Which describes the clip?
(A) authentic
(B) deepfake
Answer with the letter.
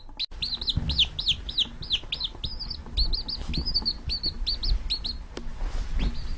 A